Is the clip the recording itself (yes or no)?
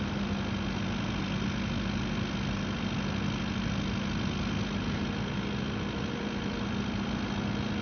yes